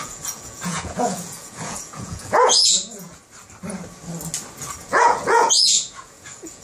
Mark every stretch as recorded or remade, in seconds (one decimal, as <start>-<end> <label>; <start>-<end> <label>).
0.0-3.2 remade; 3.2-4.8 recorded; 4.8-6.6 remade